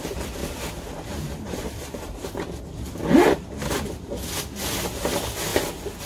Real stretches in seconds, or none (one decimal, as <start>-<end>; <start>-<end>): 0.0-0.4; 2.6-6.1